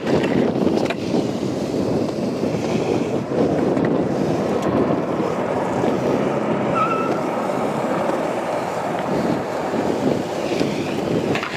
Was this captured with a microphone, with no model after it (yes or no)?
no